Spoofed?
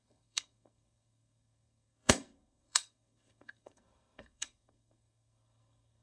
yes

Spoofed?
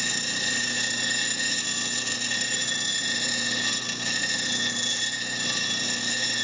no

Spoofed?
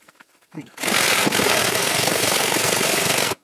yes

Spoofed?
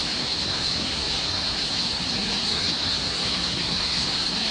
yes